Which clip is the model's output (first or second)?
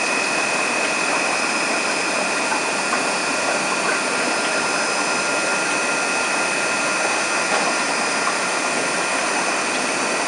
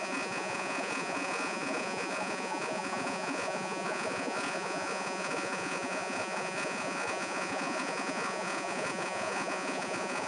second